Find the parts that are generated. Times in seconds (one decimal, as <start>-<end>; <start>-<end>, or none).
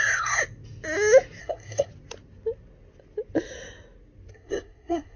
0.0-0.4; 1.4-1.9; 4.3-5.2